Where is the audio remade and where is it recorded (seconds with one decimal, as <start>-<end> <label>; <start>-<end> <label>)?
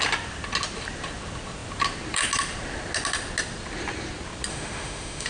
0.0-4.5 recorded; 4.5-5.3 remade